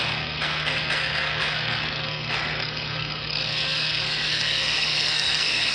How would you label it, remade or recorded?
remade